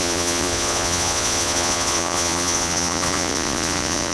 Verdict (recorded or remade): remade